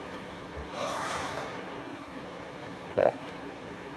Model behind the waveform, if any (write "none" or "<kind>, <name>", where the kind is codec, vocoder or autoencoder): codec, SNAC